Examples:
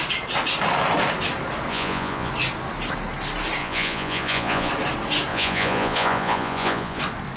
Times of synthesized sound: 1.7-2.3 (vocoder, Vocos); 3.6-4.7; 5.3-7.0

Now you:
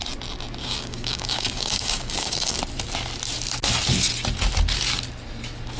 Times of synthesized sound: 0.6-2.6 (codec, DAC)

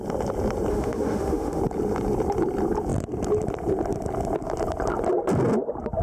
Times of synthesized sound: 0.7-1.6 (autoencoder, DAC-VAE)

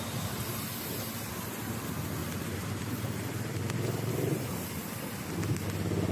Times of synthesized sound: 0.5-1.6 (vocoder, BigVGAN v2); 2.2-4.1

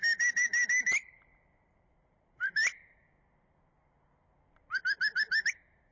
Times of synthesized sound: 0.0-0.5 (vocoder, BigVGAN v2); 2.1-3.0

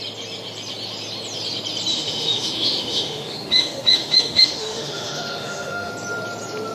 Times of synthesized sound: 1.9-5.9 (autoencoder, DAC-VAE)

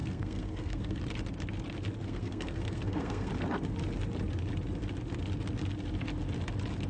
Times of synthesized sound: 0.0-1.0 (codec, SNAC); 2.0-3.3